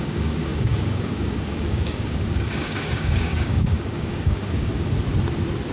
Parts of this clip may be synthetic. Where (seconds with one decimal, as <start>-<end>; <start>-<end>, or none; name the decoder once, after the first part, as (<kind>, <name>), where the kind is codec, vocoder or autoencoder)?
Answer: 0.0-4.7 (codec, DAC)